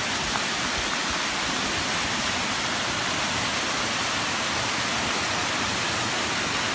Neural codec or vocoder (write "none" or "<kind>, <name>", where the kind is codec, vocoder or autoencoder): none